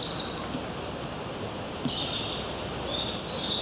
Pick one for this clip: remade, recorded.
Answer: recorded